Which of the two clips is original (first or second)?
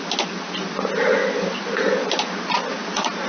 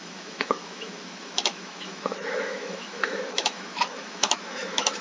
first